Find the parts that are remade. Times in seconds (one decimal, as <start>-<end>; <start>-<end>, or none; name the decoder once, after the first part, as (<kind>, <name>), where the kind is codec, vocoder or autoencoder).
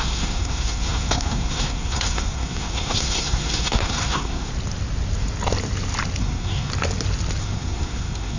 0.0-4.5 (codec, SNAC); 6.2-6.7; 7.4-8.4